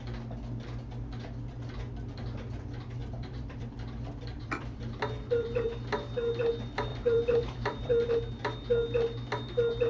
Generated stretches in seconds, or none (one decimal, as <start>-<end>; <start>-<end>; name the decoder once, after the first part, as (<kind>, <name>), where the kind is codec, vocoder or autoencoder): 3.0-4.8 (vocoder, BigVGAN v2); 6.9-8.1